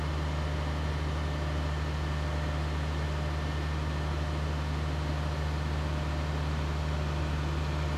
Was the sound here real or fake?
real